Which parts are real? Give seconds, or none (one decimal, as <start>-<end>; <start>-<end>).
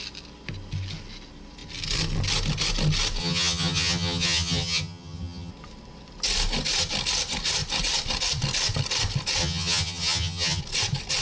0.0-3.2; 5.5-9.4; 10.6-11.2